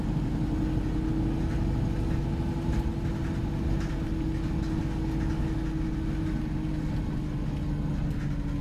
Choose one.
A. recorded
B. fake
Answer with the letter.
A